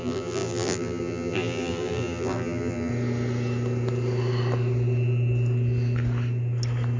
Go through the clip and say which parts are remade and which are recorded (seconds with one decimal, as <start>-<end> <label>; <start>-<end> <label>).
0.0-2.9 remade; 2.9-7.0 recorded